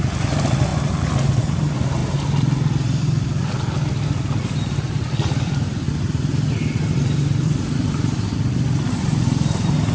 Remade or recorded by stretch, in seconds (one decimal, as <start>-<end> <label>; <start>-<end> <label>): 0.0-0.7 remade; 0.7-1.4 recorded; 1.4-2.0 remade; 2.0-2.7 recorded; 2.7-9.9 remade